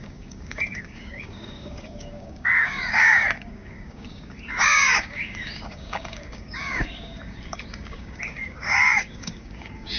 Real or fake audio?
fake